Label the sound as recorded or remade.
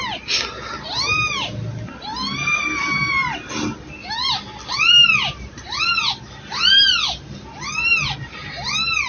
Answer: recorded